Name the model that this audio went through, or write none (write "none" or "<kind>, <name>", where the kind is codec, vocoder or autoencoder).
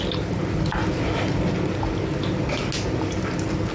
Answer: none